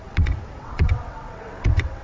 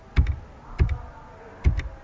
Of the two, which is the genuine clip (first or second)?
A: second